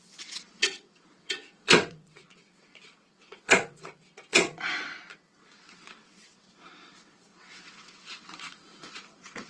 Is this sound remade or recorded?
remade